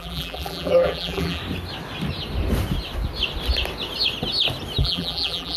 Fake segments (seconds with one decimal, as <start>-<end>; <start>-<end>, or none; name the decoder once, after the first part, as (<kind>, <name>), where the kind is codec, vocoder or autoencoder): 0.0-1.4 (vocoder, BigVGAN v2); 4.8-5.6